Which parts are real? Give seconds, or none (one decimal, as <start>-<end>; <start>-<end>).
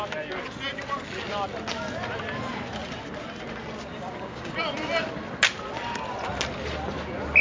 0.0-3.9; 4.5-7.4